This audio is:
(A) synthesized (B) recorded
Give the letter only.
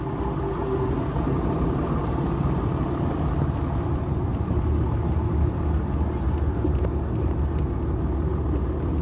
B